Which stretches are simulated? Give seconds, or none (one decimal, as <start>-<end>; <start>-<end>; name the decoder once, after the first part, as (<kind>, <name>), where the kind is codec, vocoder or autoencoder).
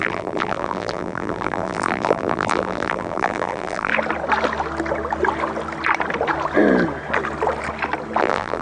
0.0-3.9 (vocoder, BigVGAN v2); 8.2-8.6